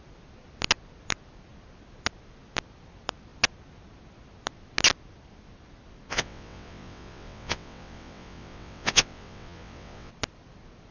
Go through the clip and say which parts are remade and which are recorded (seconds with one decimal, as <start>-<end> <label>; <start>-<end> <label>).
0.0-6.1 recorded; 6.1-10.1 remade; 10.1-10.9 recorded